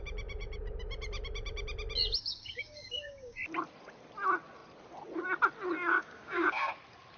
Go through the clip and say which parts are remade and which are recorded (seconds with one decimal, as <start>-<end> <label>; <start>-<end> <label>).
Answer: 0.0-2.3 recorded; 2.3-3.4 remade; 3.4-5.9 recorded; 5.9-6.7 remade; 6.7-7.2 recorded